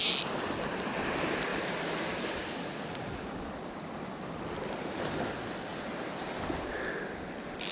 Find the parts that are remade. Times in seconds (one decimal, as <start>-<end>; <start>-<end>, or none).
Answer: none